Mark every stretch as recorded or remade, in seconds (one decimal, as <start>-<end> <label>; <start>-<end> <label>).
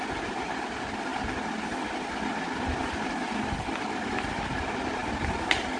0.0-5.8 recorded